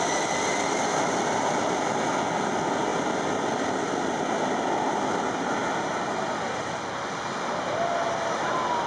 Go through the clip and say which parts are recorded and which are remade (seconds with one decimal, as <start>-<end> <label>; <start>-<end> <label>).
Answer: 0.0-8.9 recorded